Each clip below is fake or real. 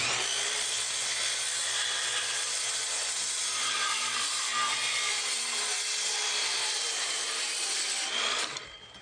fake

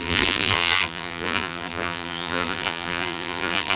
fake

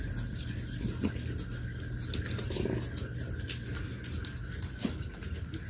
real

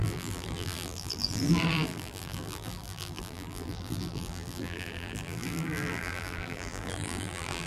fake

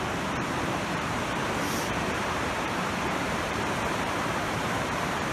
fake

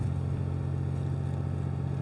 real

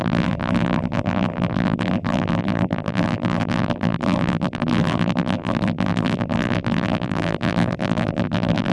fake